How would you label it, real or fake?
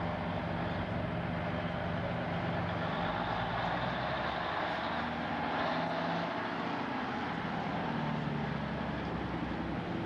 real